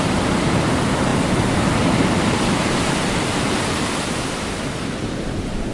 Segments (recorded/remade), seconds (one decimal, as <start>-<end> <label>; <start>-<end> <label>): 0.0-5.7 recorded